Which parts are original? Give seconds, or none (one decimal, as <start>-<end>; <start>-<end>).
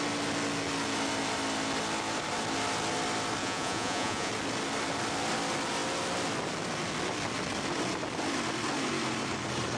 0.0-3.4; 4.3-9.8